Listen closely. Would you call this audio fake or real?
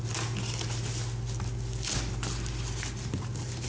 real